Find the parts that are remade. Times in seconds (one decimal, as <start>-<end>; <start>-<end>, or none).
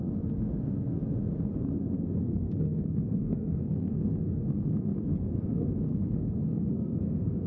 0.0-1.0; 2.0-7.5